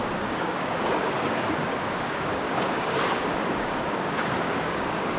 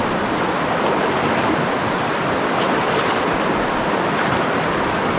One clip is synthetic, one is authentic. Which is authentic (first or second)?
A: second